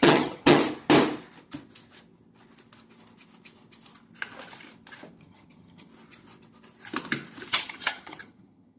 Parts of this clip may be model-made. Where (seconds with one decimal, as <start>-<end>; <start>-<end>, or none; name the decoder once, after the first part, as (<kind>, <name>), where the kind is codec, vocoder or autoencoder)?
0.0-0.6 (vocoder, HiFi-GAN); 5.2-5.9; 7.5-8.8